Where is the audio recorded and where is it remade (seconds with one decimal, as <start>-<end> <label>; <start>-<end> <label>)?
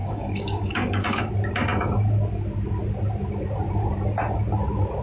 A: 0.0-1.2 remade; 1.2-5.0 recorded